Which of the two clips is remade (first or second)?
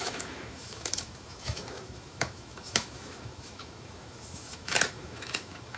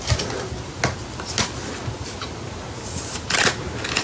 first